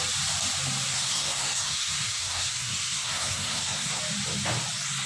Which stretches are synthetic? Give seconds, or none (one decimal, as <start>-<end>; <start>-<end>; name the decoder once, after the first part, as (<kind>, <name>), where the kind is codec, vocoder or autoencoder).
0.9-4.0 (codec, SNAC)

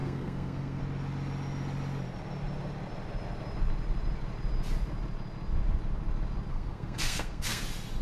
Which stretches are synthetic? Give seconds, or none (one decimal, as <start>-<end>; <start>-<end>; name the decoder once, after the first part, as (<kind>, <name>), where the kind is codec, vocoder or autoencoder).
0.0-0.8 (codec, SNAC); 6.5-7.6

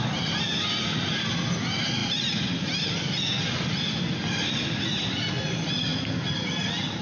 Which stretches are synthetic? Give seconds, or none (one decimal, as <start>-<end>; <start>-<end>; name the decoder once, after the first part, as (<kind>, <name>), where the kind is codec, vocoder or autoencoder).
none

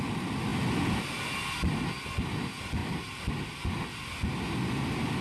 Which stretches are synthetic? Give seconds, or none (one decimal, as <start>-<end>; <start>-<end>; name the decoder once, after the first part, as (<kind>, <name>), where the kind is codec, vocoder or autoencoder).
none